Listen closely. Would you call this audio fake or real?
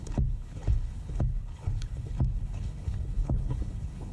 fake